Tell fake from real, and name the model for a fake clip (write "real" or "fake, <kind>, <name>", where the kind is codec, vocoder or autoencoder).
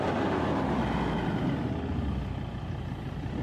real